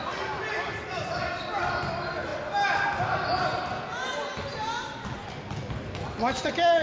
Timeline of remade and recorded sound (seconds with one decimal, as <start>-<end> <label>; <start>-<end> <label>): 0.0-6.8 recorded